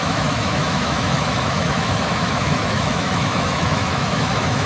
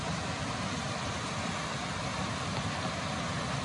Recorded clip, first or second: second